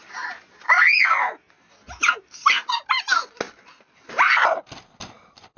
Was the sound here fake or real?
real